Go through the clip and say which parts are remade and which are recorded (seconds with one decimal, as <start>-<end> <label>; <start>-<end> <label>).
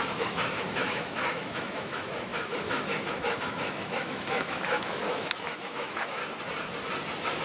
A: 0.0-6.2 remade; 6.2-7.4 recorded